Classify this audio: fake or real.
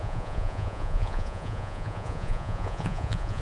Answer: fake